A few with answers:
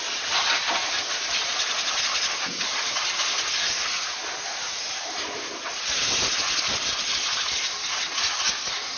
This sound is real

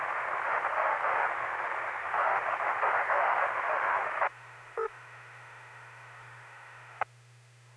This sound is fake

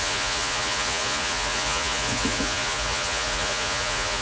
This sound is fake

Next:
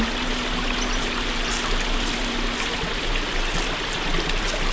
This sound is real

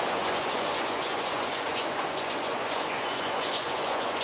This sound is fake